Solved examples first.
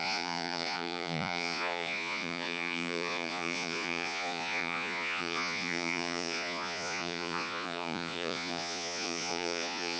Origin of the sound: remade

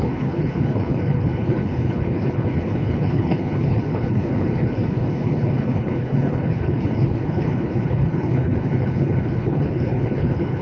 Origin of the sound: remade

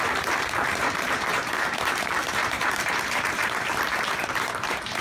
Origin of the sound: remade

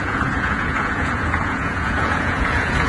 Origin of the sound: remade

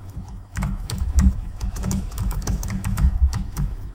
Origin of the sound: remade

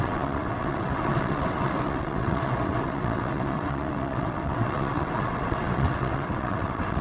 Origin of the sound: remade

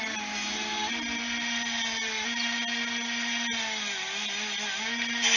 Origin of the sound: recorded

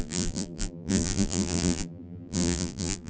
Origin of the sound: remade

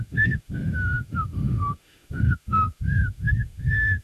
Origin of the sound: remade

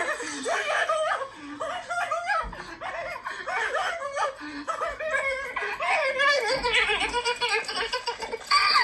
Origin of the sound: recorded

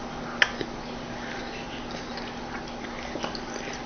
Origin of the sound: recorded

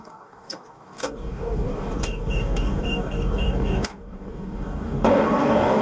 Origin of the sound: remade